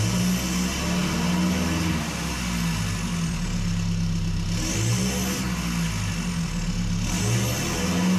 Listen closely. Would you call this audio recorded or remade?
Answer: recorded